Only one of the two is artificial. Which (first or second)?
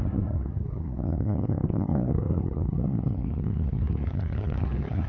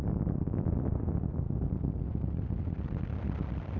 first